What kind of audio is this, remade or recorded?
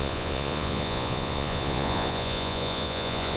remade